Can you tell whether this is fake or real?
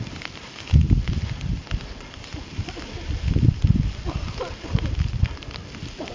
real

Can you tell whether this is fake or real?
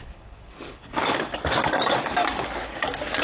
fake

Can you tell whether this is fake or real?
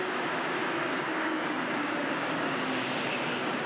fake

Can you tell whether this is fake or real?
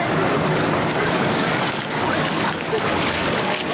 fake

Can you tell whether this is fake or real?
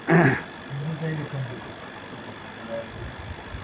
real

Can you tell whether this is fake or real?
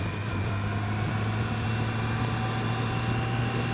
real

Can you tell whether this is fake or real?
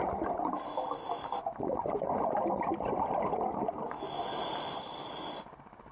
real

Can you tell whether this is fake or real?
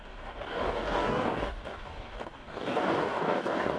fake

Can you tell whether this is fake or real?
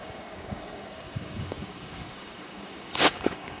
fake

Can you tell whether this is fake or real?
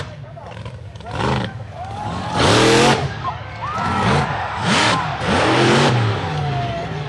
fake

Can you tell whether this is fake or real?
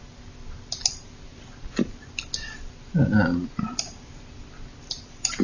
real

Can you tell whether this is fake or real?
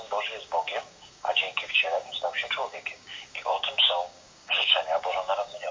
fake